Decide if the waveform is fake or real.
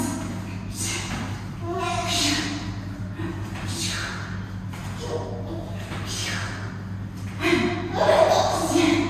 real